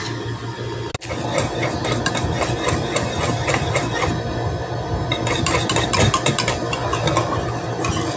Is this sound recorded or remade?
recorded